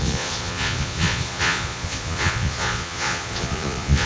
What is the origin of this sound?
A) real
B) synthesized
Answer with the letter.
B